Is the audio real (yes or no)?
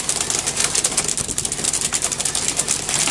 yes